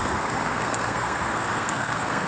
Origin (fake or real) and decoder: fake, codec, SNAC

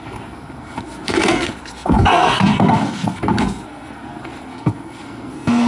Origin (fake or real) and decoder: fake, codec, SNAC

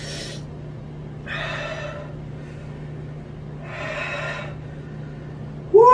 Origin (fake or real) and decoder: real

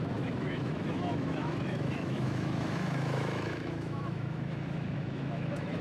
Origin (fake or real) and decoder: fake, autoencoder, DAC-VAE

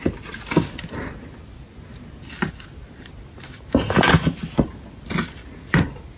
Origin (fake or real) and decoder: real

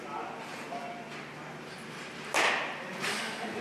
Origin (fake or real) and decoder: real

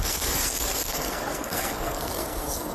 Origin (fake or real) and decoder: fake, codec, SNAC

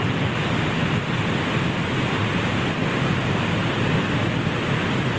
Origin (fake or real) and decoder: real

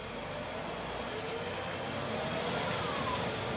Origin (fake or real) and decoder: real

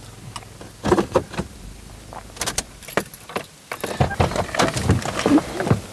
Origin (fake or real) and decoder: real